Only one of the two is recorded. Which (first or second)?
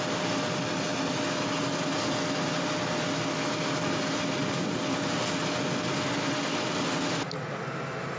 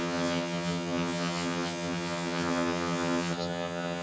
first